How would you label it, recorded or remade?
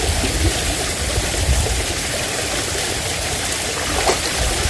recorded